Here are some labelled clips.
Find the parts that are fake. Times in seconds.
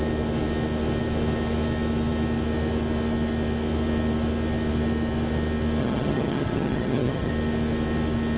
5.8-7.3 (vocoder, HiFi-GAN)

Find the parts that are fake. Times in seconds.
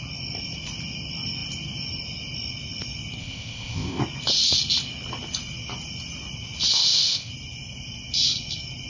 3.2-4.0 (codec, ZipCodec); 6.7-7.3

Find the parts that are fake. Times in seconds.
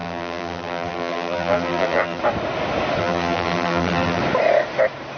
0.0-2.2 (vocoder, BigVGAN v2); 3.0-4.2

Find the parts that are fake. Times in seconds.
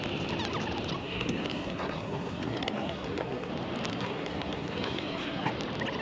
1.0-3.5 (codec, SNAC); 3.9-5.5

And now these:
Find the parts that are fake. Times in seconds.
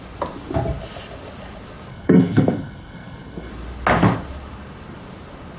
1.9-3.5 (codec, SNAC)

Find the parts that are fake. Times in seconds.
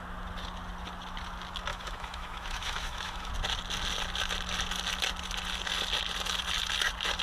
1.7-3.3 (autoencoder, DAC-VAE)